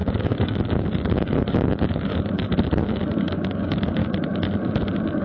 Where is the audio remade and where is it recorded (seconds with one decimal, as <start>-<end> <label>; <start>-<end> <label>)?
0.0-2.1 remade; 2.1-2.9 recorded; 2.9-4.0 remade; 4.0-5.2 recorded